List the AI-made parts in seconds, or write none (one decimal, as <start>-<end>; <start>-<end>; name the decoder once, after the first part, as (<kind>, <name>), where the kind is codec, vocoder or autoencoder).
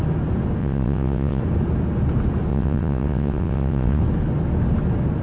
0.6-1.4 (vocoder, WaveNeXt); 2.5-4.0